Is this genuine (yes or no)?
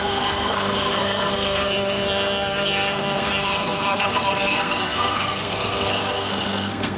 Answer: no